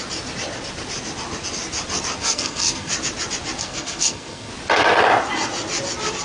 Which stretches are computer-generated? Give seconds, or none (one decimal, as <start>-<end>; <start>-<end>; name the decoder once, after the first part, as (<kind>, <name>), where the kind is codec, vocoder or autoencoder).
2.2-2.9 (codec, SNAC); 3.6-4.5